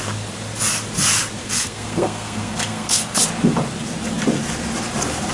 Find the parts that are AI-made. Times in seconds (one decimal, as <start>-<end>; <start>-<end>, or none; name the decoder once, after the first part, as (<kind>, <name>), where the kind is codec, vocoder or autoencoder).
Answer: 1.4-3.2 (codec, SNAC)